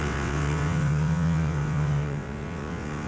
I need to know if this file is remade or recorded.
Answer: remade